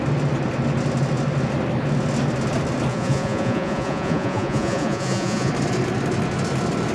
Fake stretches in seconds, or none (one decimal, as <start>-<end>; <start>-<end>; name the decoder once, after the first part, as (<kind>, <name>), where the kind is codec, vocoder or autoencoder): 2.9-5.5 (vocoder, Vocos)